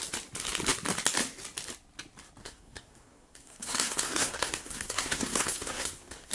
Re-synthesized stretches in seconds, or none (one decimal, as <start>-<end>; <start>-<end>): 2.4-6.3